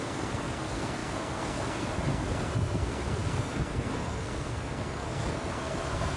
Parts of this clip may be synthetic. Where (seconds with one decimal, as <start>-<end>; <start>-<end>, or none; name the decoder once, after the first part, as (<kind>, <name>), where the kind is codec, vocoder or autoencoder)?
0.0-6.2 (codec, SNAC)